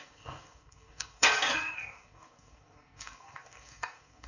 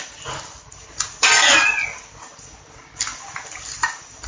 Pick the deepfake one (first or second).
first